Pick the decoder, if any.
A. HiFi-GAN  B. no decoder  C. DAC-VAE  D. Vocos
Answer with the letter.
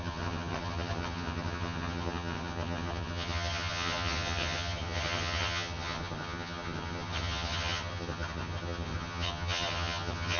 A